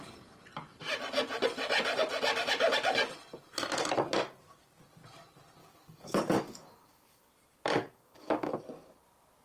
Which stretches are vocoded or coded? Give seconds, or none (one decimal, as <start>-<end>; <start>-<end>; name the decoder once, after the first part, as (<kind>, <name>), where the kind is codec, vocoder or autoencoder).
5.6-7.3 (codec, DAC); 7.7-8.5